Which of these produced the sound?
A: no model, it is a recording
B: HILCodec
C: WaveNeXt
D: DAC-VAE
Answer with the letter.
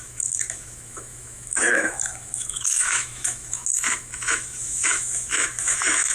D